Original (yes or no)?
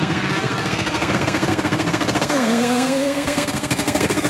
no